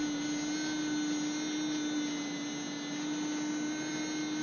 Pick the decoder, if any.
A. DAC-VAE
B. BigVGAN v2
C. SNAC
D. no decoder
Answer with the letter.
D